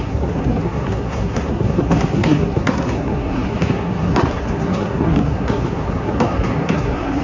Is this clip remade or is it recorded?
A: remade